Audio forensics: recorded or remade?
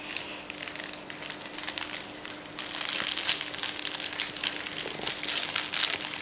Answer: recorded